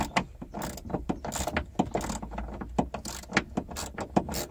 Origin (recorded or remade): recorded